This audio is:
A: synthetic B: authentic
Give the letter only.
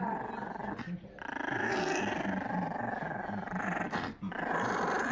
B